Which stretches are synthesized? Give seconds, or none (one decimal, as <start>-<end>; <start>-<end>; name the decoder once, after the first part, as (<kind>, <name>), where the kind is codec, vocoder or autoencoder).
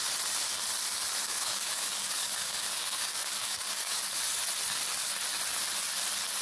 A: 1.2-4.2 (codec, DAC)